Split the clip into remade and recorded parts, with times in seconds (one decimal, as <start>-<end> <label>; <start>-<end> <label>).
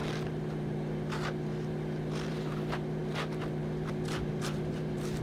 0.0-5.2 recorded